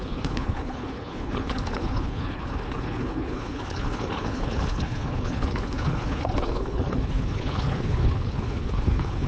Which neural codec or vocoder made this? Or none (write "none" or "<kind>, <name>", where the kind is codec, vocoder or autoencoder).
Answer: codec, HILCodec